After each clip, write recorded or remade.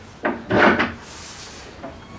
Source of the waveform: recorded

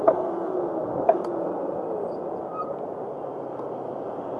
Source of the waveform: recorded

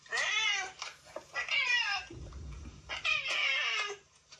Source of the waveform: remade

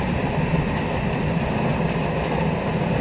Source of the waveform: recorded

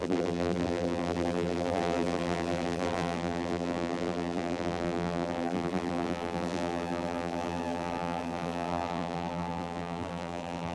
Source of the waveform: remade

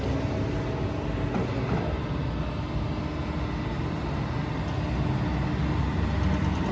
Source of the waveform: recorded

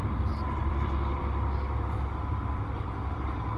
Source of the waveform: remade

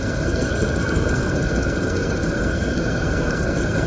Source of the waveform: remade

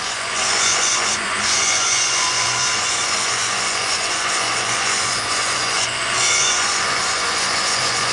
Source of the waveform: remade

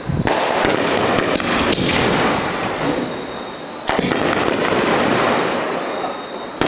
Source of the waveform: recorded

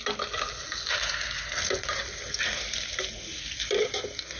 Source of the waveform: recorded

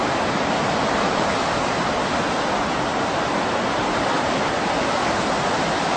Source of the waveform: recorded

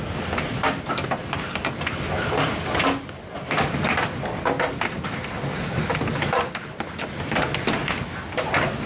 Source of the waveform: recorded